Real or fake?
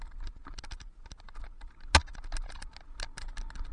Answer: real